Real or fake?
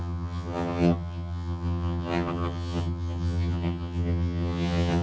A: fake